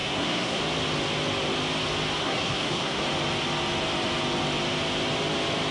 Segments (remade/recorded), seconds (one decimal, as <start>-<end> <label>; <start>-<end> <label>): 0.0-0.6 remade; 0.6-2.2 recorded; 2.2-3.0 remade; 3.0-5.7 recorded